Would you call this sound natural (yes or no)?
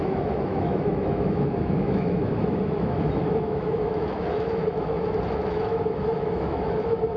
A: no